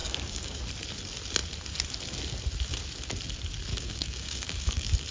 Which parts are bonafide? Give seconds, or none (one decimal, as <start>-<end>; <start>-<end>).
0.6-3.7